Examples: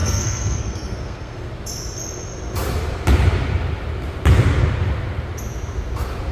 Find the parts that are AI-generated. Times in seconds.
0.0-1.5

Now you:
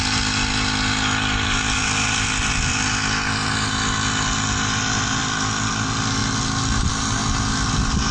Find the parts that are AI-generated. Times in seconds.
none

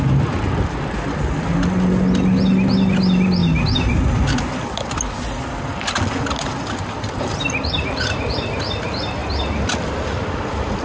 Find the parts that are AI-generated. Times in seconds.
none

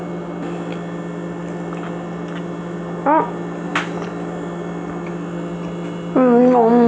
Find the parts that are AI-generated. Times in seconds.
none

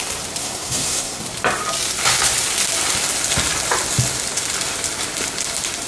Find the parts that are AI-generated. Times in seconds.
0.4-1.2

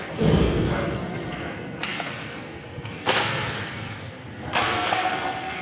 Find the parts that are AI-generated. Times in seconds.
0.0-5.6